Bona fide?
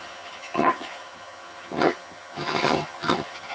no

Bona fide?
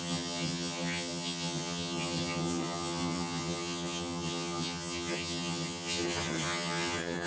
no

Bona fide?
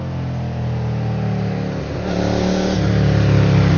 yes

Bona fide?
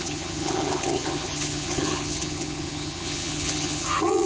no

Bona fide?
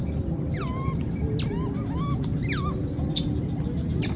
yes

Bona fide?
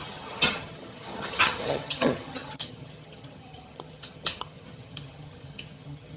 no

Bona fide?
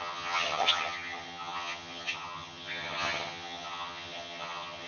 no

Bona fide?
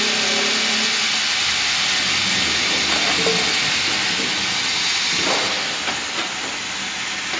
yes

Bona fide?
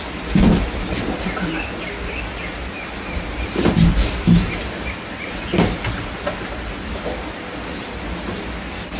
yes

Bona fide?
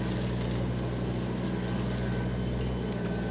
yes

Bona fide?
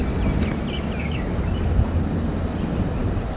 yes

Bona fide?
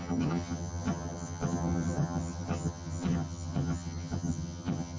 no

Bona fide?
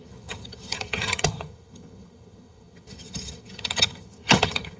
no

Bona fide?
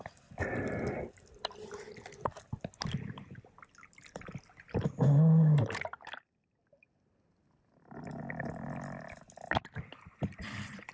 yes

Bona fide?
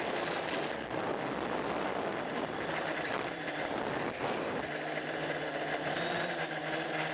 yes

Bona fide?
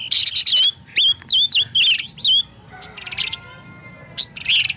yes